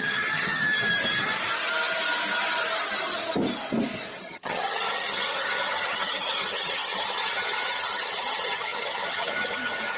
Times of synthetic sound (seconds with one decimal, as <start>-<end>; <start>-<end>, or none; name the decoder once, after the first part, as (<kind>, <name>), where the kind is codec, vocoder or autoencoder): 0.0-0.8 (vocoder, HiFi-GAN); 4.2-10.0